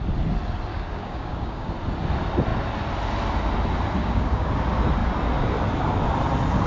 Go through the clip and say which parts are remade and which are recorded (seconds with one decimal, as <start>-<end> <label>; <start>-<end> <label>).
0.0-0.7 recorded; 0.7-1.7 remade; 1.7-4.0 recorded; 4.0-4.5 remade; 4.5-6.7 recorded